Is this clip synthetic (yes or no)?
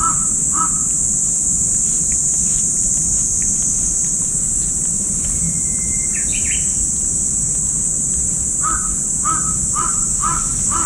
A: no